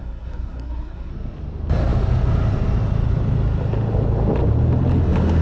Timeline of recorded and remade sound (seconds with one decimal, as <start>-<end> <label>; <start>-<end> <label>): 0.0-1.1 remade; 1.1-5.4 recorded